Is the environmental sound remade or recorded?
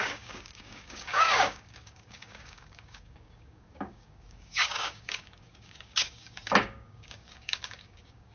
remade